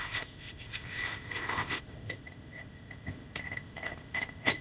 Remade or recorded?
remade